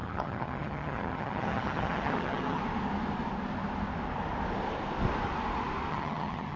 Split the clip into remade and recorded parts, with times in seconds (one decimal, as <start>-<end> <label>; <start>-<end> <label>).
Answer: 0.0-2.6 remade; 2.6-5.9 recorded; 5.9-6.6 remade